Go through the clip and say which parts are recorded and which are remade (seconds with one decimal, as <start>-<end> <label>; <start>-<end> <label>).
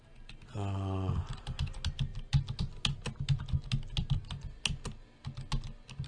0.0-6.1 recorded